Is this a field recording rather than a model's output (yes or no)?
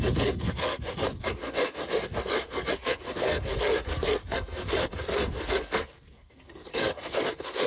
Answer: no